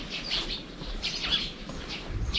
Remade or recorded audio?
remade